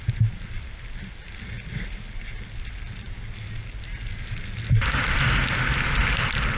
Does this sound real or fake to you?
real